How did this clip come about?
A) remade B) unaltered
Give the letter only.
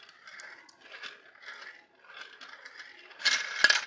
B